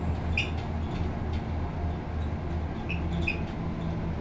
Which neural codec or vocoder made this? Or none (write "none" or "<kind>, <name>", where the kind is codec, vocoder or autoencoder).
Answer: none